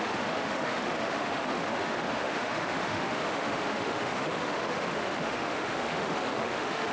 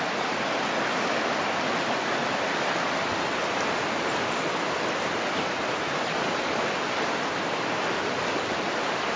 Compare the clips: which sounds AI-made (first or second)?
first